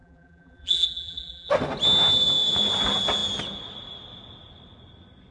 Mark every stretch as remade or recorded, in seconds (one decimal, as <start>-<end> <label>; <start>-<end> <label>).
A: 0.0-1.5 remade; 1.5-5.3 recorded